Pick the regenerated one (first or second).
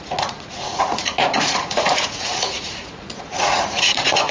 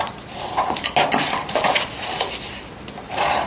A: first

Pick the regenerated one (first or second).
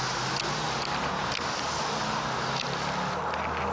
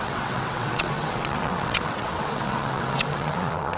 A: second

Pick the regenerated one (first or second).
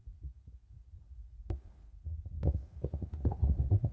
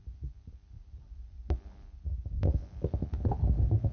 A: first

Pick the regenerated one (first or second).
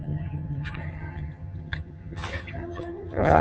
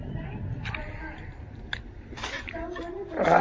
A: first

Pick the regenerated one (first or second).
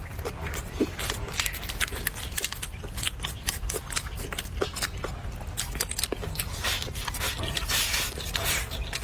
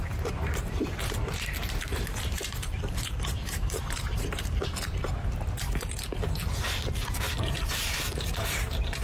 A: second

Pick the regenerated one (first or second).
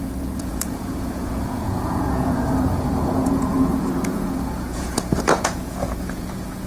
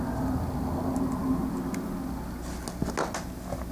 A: first